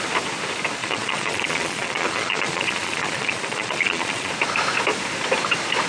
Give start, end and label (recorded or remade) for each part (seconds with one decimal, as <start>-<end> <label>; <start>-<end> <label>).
0.0-0.8 recorded; 0.8-4.3 remade; 4.3-5.9 recorded